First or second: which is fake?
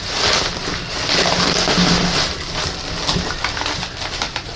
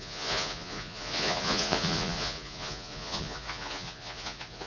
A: second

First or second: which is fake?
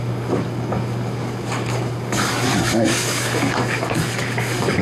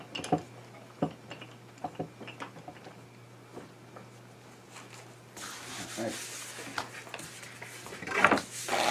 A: first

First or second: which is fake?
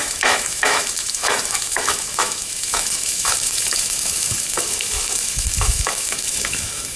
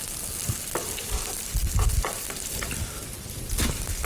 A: first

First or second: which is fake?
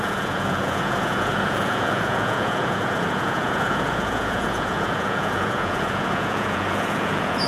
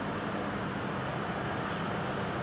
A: first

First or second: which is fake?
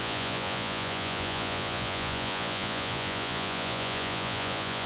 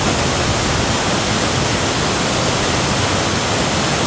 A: first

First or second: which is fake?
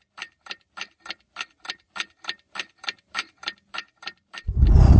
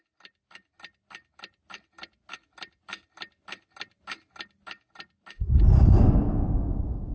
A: first